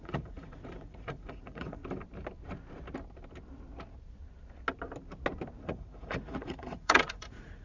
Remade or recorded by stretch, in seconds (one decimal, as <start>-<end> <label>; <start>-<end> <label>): 0.0-1.8 remade; 1.8-5.6 recorded; 5.6-7.6 remade